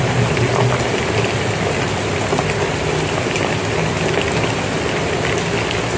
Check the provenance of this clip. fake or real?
real